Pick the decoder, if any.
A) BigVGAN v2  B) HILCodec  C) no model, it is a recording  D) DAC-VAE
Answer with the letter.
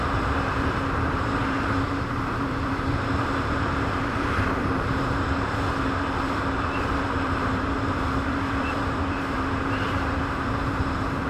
A